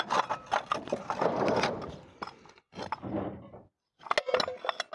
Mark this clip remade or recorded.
recorded